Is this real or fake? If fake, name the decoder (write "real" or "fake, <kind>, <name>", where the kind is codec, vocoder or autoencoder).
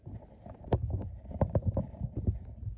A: real